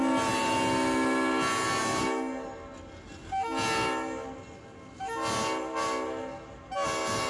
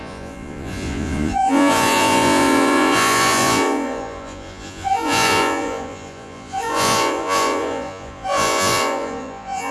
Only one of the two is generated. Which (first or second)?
second